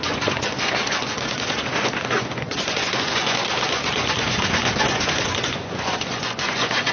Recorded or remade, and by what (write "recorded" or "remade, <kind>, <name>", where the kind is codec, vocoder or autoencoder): remade, vocoder, Vocos